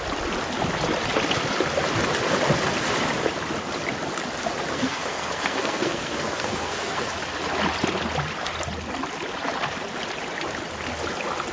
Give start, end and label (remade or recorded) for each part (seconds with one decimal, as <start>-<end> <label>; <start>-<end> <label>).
0.0-4.7 recorded; 4.7-7.1 remade; 7.1-11.5 recorded